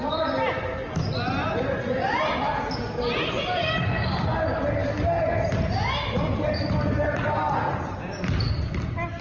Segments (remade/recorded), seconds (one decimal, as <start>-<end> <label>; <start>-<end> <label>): 0.0-9.2 recorded